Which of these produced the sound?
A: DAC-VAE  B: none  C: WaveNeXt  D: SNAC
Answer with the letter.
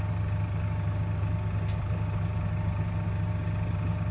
B